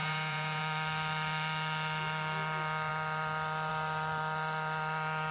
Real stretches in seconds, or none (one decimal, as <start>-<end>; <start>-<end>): 0.6-5.3